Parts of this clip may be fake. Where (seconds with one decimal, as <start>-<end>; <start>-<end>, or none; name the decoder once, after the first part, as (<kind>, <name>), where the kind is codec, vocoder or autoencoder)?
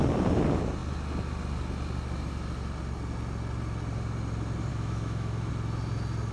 4.7-5.5 (autoencoder, DAC-VAE)